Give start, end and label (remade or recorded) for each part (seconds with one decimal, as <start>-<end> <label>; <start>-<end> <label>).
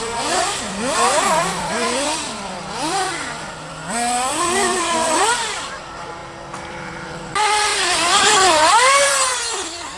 0.0-6.2 remade; 6.2-6.7 recorded; 6.7-10.0 remade